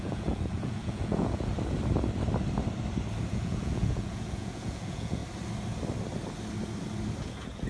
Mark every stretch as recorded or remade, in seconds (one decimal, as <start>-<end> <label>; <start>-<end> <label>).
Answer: 0.0-1.5 remade; 1.5-3.3 recorded; 3.3-5.2 remade; 5.2-7.2 recorded; 7.2-7.7 remade